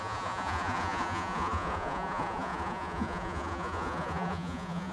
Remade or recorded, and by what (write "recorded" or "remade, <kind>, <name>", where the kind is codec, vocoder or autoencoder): remade, vocoder, Vocos